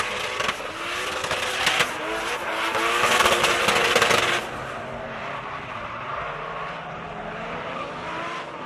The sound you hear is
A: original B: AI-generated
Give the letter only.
A